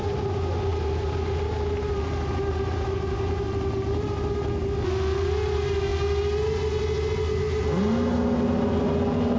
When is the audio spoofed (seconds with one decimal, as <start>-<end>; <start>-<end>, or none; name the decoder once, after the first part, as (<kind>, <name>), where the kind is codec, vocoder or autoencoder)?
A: none